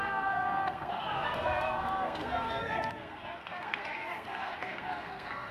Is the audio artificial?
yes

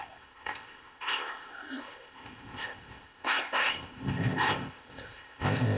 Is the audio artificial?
yes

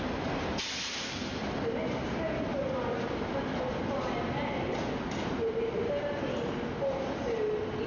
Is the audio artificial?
no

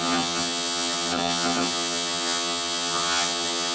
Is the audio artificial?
yes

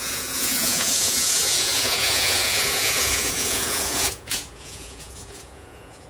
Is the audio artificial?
yes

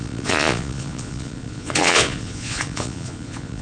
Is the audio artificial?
yes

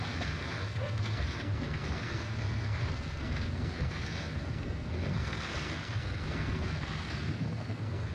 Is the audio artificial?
yes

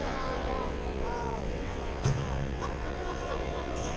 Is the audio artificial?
yes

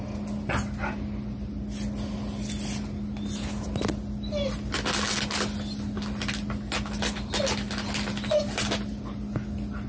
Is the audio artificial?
no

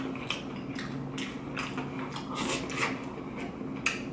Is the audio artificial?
no